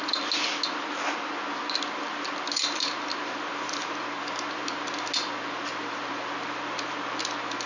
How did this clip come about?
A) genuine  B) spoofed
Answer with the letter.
A